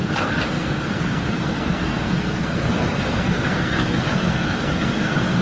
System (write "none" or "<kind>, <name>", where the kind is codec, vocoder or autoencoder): codec, SNAC